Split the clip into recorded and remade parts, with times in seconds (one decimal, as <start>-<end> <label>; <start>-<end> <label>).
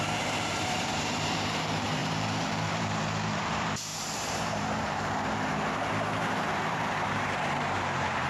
0.0-8.3 remade